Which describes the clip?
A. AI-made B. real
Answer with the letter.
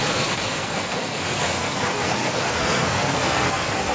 A